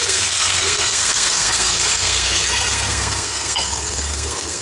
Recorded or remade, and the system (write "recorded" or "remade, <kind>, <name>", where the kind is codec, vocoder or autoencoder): remade, codec, SNAC